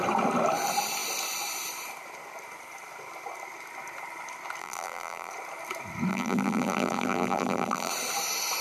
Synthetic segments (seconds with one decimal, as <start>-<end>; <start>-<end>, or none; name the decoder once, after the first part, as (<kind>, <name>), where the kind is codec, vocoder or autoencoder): 4.6-5.3 (vocoder, BigVGAN v2); 6.1-7.9